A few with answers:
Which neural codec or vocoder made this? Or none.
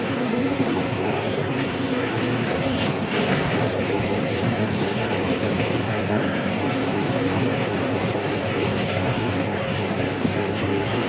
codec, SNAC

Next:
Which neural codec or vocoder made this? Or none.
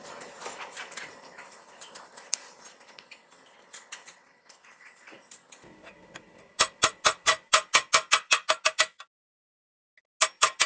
none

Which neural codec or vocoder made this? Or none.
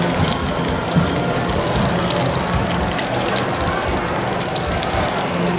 none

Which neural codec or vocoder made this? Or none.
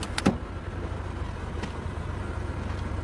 none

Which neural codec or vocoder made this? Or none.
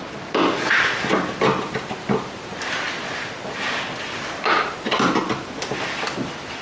none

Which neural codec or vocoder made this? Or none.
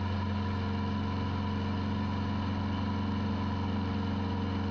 none